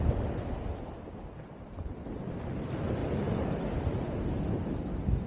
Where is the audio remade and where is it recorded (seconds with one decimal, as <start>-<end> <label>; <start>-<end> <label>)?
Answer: 0.0-5.3 recorded